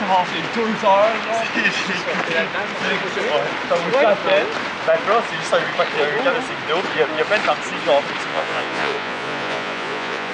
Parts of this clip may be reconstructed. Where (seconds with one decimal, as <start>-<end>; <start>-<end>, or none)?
8.3-10.3